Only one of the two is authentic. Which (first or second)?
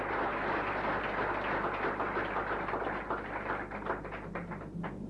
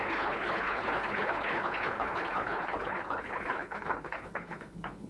first